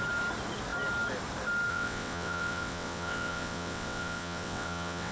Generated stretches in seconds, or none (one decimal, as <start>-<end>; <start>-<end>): 1.7-5.1